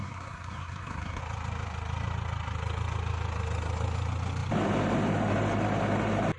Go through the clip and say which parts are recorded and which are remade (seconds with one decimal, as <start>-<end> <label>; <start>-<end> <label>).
0.0-1.2 remade; 1.2-6.4 recorded